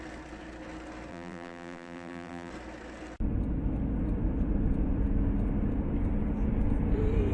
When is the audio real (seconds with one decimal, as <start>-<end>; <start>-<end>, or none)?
0.0-1.1; 2.5-7.3